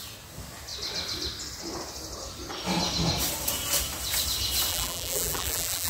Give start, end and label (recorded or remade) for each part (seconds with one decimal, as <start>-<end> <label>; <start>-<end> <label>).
0.0-4.7 recorded; 4.7-5.9 remade